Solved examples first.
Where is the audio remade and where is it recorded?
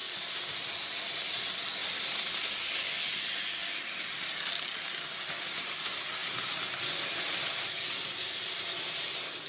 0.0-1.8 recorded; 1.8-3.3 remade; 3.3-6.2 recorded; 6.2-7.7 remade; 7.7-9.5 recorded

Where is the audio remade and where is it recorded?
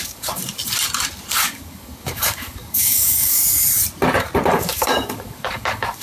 0.0-0.4 remade; 0.4-1.3 recorded; 1.3-3.4 remade; 3.4-4.6 recorded; 4.6-6.0 remade